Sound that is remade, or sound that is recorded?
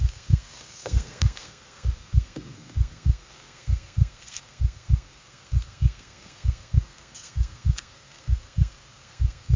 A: remade